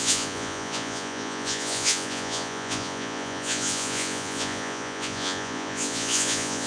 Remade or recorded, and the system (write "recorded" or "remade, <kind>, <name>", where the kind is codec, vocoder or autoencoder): remade, vocoder, Vocos